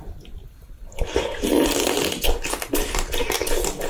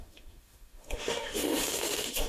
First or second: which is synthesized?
second